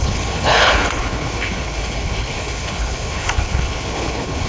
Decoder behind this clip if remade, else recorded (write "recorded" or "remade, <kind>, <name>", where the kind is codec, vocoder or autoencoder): remade, codec, HILCodec